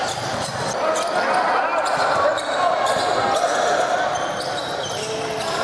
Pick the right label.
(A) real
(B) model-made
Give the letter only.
A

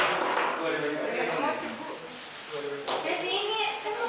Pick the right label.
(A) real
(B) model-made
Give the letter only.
A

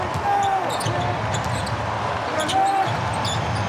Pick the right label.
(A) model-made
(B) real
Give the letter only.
B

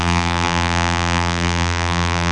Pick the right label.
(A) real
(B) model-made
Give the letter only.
B